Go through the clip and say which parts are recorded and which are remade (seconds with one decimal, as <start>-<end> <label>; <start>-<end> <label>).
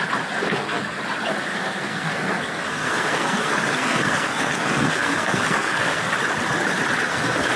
0.0-0.4 recorded; 0.4-1.0 remade; 1.0-1.5 recorded; 1.5-6.1 remade; 6.1-7.1 recorded; 7.1-7.6 remade